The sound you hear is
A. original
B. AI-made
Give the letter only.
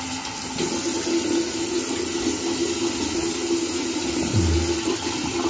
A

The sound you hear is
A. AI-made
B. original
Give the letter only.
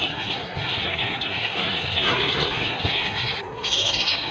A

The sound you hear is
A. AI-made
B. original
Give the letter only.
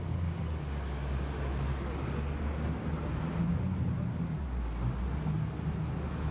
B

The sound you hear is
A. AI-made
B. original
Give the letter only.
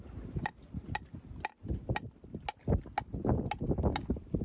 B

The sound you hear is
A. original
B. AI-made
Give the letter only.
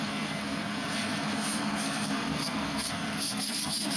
B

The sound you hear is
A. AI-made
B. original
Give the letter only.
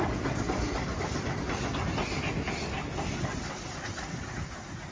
B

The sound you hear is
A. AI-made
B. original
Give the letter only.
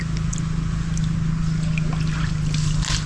B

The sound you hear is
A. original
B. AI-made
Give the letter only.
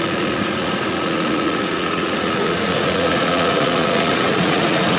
B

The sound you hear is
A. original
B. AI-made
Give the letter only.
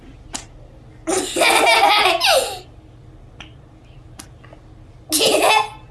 A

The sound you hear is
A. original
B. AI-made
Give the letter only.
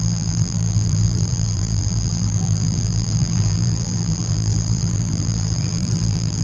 B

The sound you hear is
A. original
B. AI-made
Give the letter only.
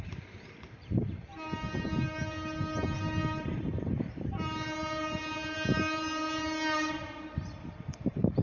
B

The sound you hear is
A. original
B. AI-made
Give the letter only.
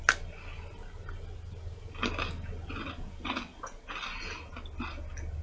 A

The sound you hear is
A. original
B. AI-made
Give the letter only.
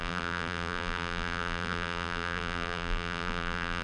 B